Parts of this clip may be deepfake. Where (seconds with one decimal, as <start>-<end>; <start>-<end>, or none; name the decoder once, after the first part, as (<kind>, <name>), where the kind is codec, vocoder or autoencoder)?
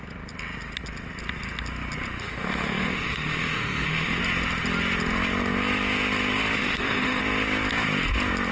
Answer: 2.2-4.2 (autoencoder, DAC-VAE); 6.6-7.2